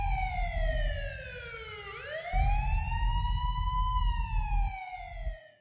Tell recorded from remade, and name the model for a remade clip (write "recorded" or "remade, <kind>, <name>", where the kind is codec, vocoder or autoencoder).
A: recorded